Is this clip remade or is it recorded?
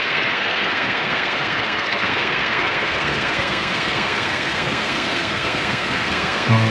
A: remade